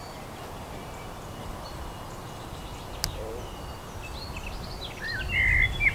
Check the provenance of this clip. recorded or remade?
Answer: recorded